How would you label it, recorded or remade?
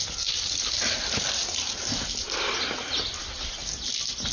recorded